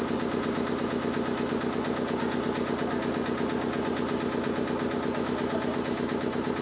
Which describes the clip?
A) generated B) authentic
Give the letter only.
B